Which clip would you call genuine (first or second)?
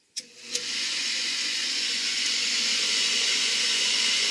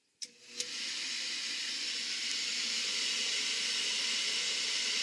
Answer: second